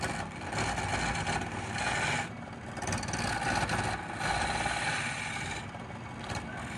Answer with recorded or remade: recorded